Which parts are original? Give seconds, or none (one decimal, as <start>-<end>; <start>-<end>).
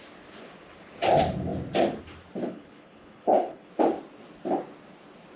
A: 0.0-2.4; 3.7-5.4